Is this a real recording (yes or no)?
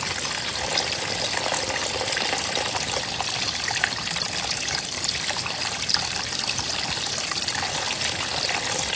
yes